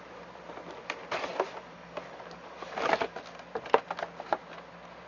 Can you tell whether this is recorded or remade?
recorded